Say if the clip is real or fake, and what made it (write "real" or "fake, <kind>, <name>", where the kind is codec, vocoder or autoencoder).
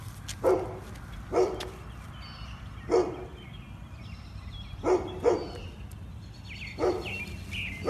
real